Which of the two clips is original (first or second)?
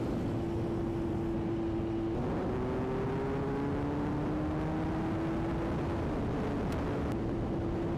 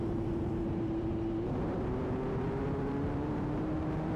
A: first